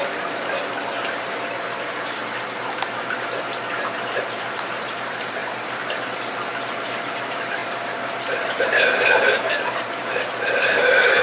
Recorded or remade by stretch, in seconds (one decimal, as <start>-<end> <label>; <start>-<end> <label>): 0.0-2.2 remade; 2.2-3.8 recorded; 3.8-11.2 remade